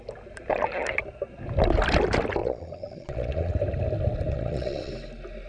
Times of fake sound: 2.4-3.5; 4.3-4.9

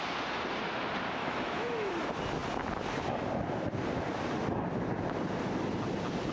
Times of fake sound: 1.2-1.9

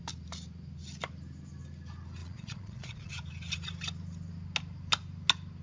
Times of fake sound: 2.2-3.1

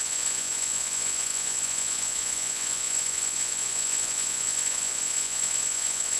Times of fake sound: 0.0-6.2

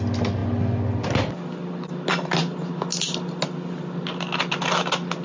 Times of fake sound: none